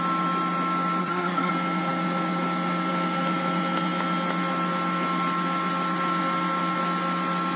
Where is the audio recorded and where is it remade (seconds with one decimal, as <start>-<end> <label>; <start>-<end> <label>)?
0.0-1.0 recorded; 1.0-1.5 remade; 1.5-7.6 recorded

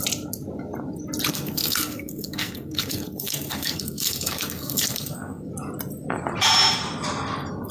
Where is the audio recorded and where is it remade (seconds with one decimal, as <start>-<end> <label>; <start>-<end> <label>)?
0.0-1.3 recorded; 1.3-5.5 remade; 5.5-7.7 recorded